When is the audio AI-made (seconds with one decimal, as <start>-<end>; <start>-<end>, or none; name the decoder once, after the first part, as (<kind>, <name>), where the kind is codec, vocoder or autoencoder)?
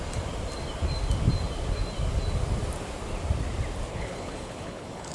3.9-5.1 (codec, HILCodec)